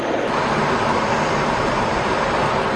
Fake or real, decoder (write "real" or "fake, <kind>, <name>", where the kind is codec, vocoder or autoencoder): fake, vocoder, BigVGAN v2